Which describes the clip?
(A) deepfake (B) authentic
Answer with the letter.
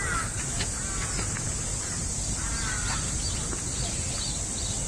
B